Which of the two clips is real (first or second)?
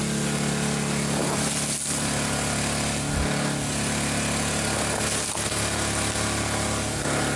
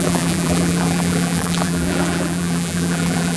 first